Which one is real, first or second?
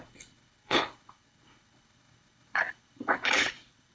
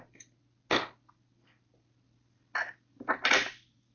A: second